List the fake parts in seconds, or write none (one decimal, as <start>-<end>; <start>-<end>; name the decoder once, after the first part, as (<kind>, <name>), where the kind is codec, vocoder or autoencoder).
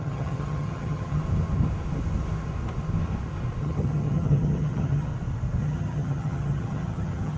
0.0-1.2 (vocoder, HiFi-GAN); 3.6-5.1; 5.6-7.4